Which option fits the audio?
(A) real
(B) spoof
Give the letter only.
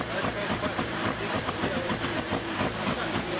B